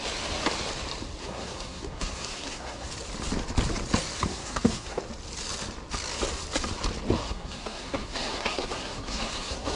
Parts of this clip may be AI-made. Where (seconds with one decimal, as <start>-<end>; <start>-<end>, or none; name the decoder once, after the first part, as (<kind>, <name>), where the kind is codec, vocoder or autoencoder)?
1.2-2.9 (codec, SNAC); 4.3-5.0; 7.2-9.8